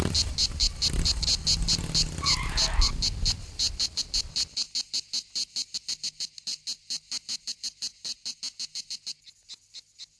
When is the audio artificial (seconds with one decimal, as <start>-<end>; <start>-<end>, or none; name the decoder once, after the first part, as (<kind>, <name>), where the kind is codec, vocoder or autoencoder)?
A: none